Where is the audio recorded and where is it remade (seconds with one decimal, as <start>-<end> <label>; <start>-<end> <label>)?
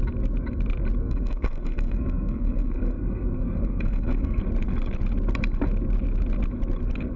0.0-1.0 recorded; 1.0-4.4 remade; 4.4-7.2 recorded